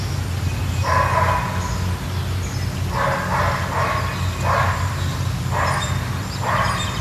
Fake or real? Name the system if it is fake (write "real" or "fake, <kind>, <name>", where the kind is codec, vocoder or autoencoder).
real